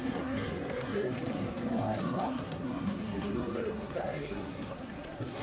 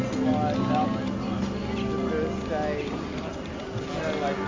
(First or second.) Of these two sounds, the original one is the second